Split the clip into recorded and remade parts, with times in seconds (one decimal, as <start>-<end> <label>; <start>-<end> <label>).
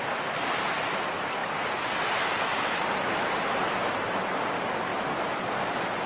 0.0-6.1 recorded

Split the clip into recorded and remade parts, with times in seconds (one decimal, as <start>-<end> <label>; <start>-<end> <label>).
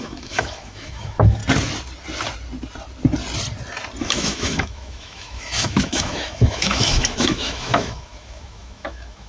0.0-1.4 remade; 1.4-4.0 recorded; 4.0-9.3 remade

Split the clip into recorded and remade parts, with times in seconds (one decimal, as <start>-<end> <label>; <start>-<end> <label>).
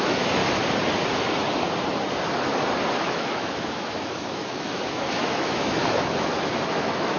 0.0-0.4 remade; 0.4-2.9 recorded; 2.9-7.2 remade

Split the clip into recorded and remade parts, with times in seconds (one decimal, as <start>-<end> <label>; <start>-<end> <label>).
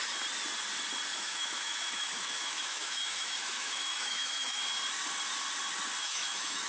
0.0-1.1 recorded; 1.1-4.6 remade; 4.6-6.0 recorded; 6.0-6.7 remade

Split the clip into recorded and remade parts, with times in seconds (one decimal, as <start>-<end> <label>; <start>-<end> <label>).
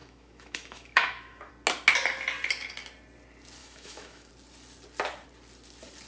0.0-1.5 remade; 1.5-3.6 recorded; 3.6-4.3 remade; 4.3-6.1 recorded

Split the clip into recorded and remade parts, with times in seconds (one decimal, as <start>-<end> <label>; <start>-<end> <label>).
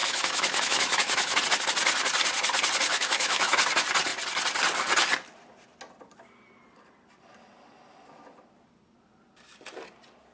0.0-1.4 remade; 1.4-2.9 recorded; 2.9-3.6 remade; 3.6-10.3 recorded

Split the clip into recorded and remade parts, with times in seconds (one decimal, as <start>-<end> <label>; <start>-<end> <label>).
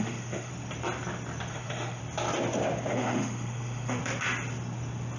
0.0-0.5 remade; 0.5-1.5 recorded; 1.5-2.0 remade; 2.0-2.9 recorded; 2.9-4.0 remade; 4.0-5.2 recorded